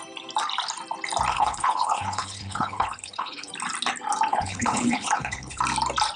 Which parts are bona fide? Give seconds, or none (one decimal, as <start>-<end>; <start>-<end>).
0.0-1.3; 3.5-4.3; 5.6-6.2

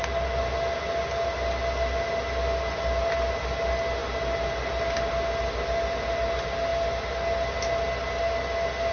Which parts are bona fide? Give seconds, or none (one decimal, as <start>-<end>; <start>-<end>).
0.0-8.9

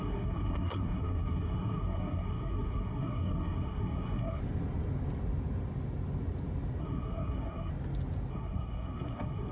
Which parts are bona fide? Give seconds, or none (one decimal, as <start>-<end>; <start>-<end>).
4.4-6.8; 7.7-8.3

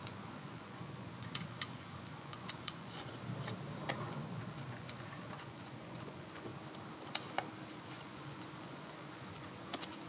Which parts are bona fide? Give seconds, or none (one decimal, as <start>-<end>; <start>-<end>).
3.2-3.9; 6.5-7.7